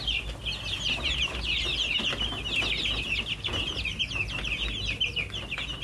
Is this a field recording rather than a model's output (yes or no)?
yes